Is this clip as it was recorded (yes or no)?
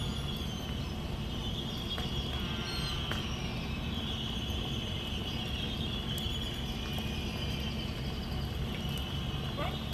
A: yes